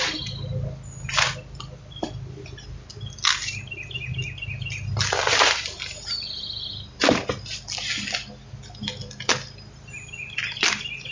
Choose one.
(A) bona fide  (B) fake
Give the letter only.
A